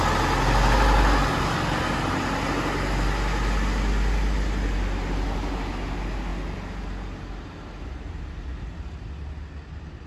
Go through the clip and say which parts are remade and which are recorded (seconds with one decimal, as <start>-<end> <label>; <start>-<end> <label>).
0.0-10.1 recorded